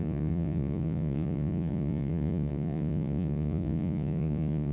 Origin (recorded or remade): remade